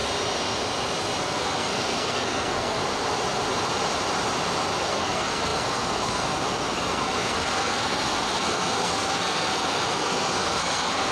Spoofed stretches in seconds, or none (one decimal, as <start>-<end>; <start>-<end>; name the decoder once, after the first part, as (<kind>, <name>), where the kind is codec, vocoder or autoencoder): 1.2-2.8 (codec, SNAC); 4.8-11.1